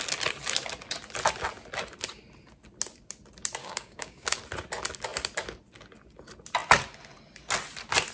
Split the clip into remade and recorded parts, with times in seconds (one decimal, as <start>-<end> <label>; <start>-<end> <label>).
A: 0.0-3.6 recorded; 3.6-4.4 remade; 4.4-8.1 recorded

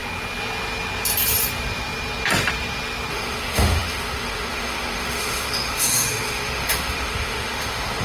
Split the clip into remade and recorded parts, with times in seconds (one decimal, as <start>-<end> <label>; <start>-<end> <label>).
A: 0.0-3.1 recorded; 3.1-8.0 remade

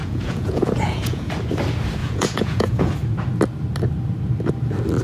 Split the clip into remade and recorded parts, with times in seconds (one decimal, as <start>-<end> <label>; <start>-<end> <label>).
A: 0.0-1.3 remade; 1.3-2.0 recorded; 2.0-2.9 remade; 2.9-5.0 recorded

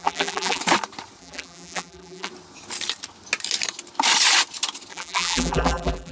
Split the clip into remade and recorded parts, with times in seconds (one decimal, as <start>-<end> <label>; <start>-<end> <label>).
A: 0.0-0.6 remade; 0.6-1.2 recorded; 1.2-2.3 remade; 2.3-4.9 recorded; 4.9-6.1 remade

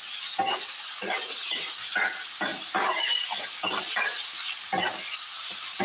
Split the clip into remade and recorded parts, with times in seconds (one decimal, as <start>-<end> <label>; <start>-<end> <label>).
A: 0.0-1.4 recorded; 1.4-2.0 remade; 2.0-2.5 recorded; 2.5-5.8 remade

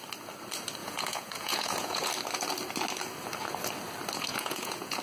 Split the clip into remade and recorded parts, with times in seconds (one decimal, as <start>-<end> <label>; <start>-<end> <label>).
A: 0.0-0.8 recorded; 0.8-2.1 remade; 2.1-4.3 recorded; 4.3-5.0 remade

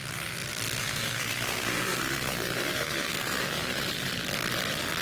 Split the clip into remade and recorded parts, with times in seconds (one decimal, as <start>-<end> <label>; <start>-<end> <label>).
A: 0.0-0.8 recorded; 0.8-3.8 remade; 3.8-5.0 recorded